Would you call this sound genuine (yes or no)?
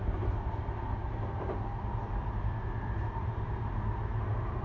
no